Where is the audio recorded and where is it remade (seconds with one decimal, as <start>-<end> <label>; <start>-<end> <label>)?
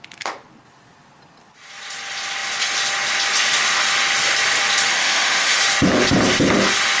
0.0-4.9 recorded; 4.9-5.6 remade; 5.6-7.0 recorded